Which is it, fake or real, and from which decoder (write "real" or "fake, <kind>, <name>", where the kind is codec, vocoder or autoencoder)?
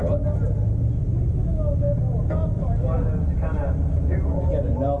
real